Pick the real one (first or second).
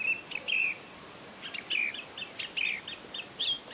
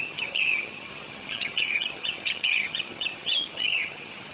first